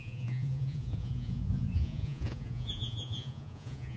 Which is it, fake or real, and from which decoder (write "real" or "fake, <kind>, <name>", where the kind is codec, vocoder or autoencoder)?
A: fake, vocoder, Vocos